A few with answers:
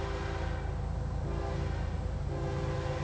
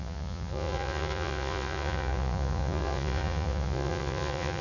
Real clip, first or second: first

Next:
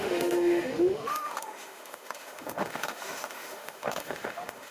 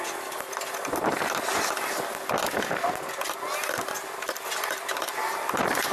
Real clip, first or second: second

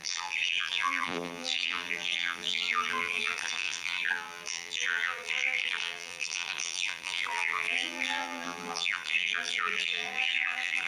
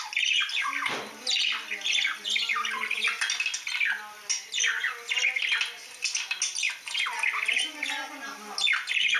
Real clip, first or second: second